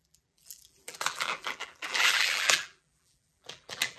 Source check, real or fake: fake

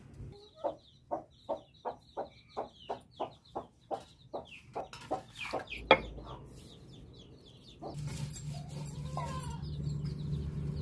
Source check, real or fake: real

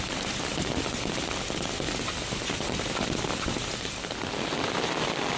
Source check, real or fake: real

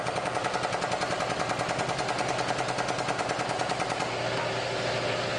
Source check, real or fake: real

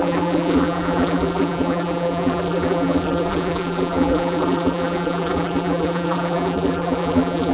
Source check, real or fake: fake